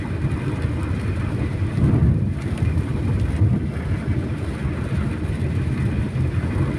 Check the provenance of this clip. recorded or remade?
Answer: recorded